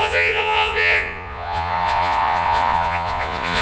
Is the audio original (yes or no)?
no